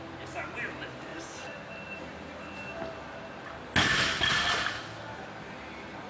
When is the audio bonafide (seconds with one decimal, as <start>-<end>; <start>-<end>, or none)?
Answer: 0.0-6.1

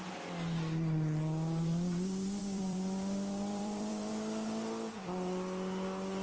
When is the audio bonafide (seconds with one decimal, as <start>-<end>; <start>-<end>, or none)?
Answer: 0.0-2.4; 4.1-6.2

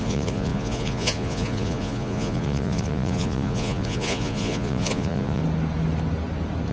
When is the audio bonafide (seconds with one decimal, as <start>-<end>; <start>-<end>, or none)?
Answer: 5.4-6.7

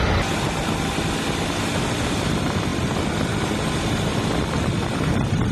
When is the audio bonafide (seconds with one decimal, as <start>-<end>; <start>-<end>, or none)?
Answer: 0.0-4.1; 5.1-5.5

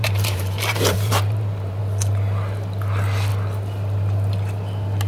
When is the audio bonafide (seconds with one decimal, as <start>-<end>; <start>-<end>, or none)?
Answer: 1.8-5.1

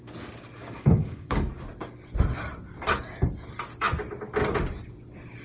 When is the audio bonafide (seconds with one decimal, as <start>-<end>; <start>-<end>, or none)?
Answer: 0.0-0.6; 1.5-5.4